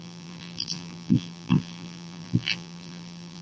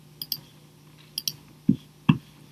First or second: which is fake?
first